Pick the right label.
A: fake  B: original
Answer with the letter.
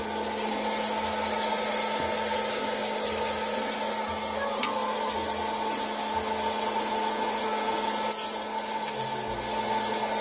B